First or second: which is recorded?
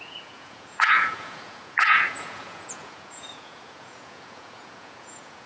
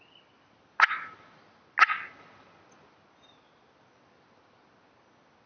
second